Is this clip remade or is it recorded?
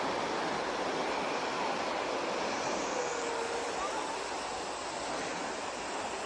recorded